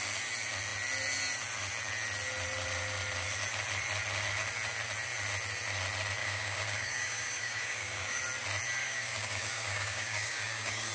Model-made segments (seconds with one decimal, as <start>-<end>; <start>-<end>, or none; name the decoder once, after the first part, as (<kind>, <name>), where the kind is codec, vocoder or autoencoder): 6.2-8.2 (codec, DAC); 8.8-10.9